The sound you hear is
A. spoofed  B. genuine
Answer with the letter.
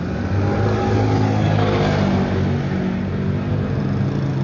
B